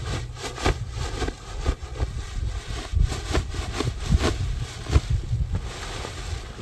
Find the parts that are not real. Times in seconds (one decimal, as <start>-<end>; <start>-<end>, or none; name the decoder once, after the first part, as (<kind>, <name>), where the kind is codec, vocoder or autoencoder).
none